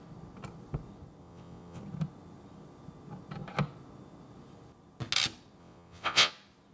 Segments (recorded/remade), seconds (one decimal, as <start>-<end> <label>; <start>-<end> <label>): 0.0-1.2 recorded; 1.2-1.8 remade; 1.8-5.6 recorded; 5.6-6.3 remade; 6.3-6.7 recorded

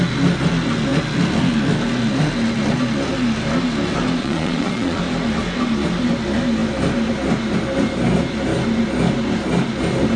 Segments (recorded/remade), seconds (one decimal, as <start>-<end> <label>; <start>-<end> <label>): 0.0-4.2 recorded; 4.2-5.0 remade; 5.0-10.2 recorded

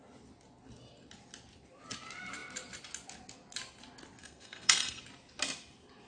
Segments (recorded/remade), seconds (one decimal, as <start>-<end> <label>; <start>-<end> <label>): 0.0-4.2 recorded; 4.2-5.0 remade; 5.0-6.1 recorded

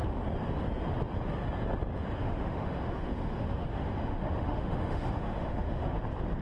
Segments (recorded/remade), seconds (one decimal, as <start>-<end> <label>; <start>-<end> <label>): 0.0-2.2 recorded; 2.2-6.0 remade; 6.0-6.4 recorded

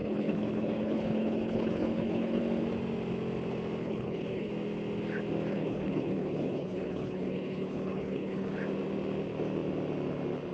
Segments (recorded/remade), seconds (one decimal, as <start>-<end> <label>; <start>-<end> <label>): 0.0-2.4 remade; 2.4-3.8 recorded; 3.8-4.5 remade; 4.5-5.5 recorded; 5.5-8.6 remade; 8.6-10.5 recorded

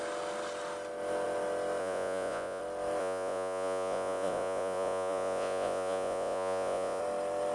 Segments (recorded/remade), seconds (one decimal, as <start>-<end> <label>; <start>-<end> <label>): 0.0-1.8 recorded; 1.8-2.6 remade; 2.6-3.0 recorded; 3.0-7.0 remade; 7.0-7.5 recorded

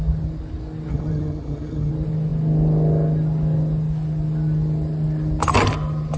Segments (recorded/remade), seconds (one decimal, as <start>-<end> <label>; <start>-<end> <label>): 0.0-0.9 recorded; 0.9-1.9 remade; 1.9-6.2 recorded

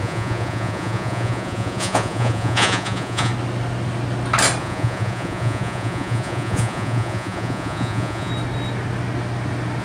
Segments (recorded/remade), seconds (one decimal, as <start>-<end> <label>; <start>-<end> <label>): 0.0-3.3 remade; 3.3-4.6 recorded; 4.6-8.3 remade; 8.3-9.8 recorded